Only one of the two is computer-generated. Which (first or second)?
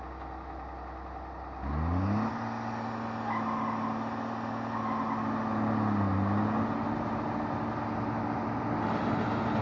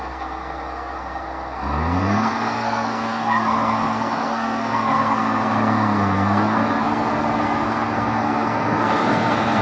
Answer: second